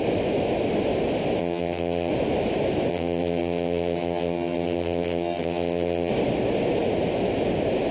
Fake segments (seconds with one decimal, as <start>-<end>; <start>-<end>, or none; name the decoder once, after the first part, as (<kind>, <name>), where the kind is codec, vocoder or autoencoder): 1.4-2.1 (vocoder, HiFi-GAN); 2.9-6.1